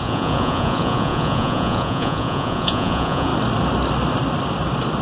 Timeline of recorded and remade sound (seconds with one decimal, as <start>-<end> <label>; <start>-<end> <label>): 0.0-3.3 remade; 3.3-5.0 recorded